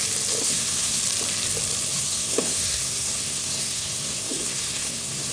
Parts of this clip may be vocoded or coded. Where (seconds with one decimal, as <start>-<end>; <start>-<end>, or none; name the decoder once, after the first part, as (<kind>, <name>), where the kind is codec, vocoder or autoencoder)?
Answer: 0.4-1.0 (codec, SNAC); 1.9-5.3